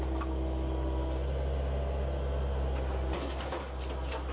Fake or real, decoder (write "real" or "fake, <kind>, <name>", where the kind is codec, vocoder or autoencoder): real